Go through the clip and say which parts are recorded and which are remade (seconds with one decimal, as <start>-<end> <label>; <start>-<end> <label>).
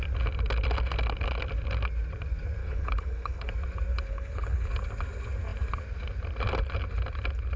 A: 0.0-2.6 recorded; 2.6-3.5 remade; 3.5-3.9 recorded; 3.9-4.7 remade; 4.7-7.6 recorded